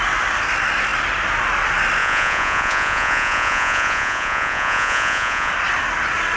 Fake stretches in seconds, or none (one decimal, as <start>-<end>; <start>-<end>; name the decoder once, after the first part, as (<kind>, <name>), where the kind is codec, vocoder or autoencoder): 2.0-5.5 (vocoder, Vocos)